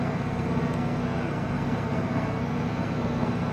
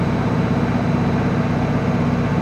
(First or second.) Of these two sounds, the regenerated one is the first